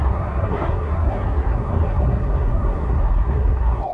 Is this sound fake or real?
fake